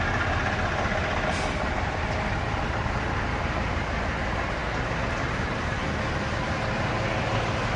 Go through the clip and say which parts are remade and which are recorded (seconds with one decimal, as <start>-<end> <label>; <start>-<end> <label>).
0.0-7.8 recorded